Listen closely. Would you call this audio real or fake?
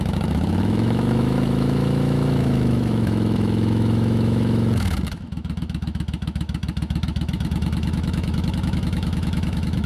fake